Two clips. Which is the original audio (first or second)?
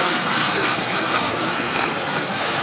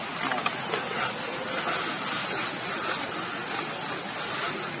second